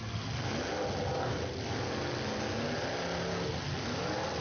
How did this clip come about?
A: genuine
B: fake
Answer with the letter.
A